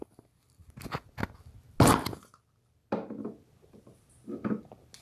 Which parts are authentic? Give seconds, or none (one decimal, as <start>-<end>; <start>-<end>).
0.0-5.0